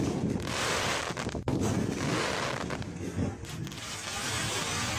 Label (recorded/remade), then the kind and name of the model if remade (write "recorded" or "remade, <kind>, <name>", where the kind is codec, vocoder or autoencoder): recorded